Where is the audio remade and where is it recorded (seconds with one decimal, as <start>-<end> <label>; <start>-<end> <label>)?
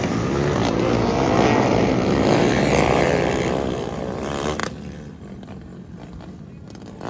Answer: 0.0-7.1 recorded